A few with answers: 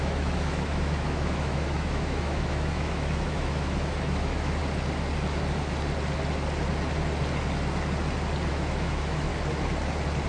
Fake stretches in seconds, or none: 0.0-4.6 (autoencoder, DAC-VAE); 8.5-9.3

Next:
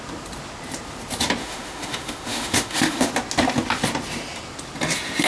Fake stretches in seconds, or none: 1.4-3.1 (autoencoder, DAC-VAE)

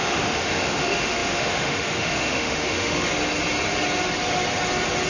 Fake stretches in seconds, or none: 0.0-3.1 (autoencoder, DAC-VAE)

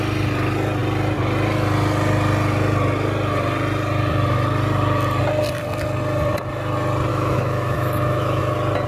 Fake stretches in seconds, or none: 7.1-8.4 (autoencoder, DAC-VAE)

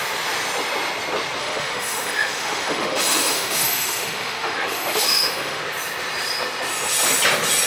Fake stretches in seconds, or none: 1.4-5.6 (autoencoder, DAC-VAE)

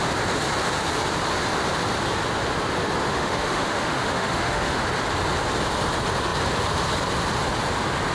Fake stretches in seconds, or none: 3.1-4.8 (autoencoder, DAC-VAE)

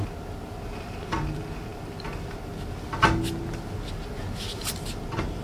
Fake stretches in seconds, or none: none

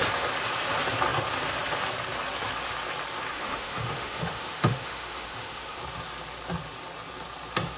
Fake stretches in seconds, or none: 3.3-5.8 (autoencoder, DAC-VAE)